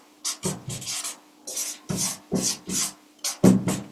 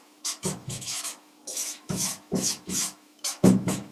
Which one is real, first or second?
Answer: first